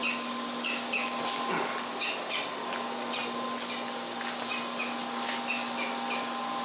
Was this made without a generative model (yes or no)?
yes